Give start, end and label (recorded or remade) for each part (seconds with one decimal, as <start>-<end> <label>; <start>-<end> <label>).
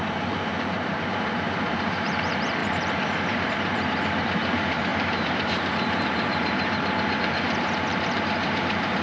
0.0-9.0 remade